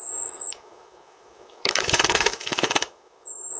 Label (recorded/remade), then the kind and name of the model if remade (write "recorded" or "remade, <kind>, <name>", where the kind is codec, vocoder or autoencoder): remade, autoencoder, DAC-VAE